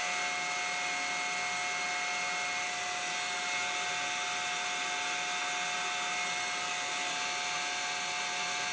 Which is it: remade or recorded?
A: recorded